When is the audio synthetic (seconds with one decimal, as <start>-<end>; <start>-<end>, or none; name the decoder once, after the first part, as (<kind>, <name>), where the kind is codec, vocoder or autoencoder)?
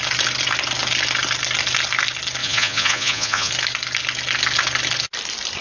2.4-3.5 (vocoder, Vocos)